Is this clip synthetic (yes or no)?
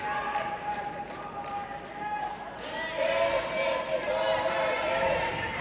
no